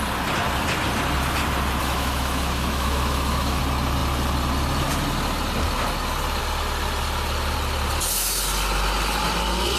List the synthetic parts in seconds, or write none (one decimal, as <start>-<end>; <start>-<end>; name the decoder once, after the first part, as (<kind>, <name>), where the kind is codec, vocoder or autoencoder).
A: 1.8-3.6 (autoencoder, DAC-VAE)